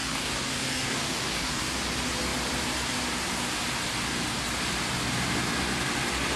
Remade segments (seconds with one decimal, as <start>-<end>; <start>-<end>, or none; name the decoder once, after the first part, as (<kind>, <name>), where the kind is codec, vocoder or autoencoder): 0.0-1.6 (codec, DAC)